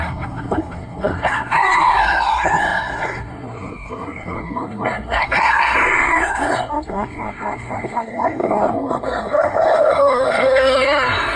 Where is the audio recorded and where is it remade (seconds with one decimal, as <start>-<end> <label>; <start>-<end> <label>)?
0.0-11.4 remade